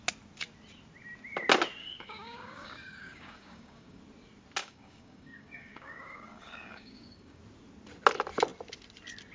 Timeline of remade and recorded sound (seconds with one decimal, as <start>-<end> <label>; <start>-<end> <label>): 0.0-1.8 recorded; 1.8-4.0 remade; 4.0-4.6 recorded; 4.6-7.4 remade; 7.4-9.3 recorded